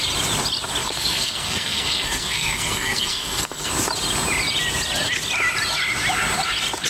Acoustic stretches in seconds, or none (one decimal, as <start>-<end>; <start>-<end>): 0.0-0.8; 3.7-6.9